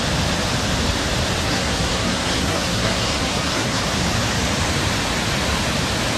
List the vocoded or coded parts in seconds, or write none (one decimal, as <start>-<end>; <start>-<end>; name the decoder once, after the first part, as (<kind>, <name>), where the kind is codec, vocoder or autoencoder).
1.4-3.8 (codec, SNAC)